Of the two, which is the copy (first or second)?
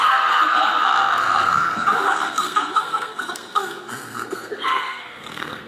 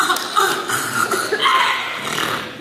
first